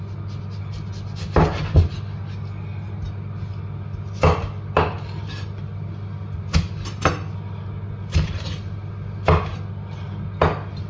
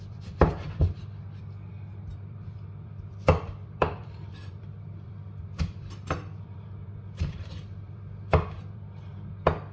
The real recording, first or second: first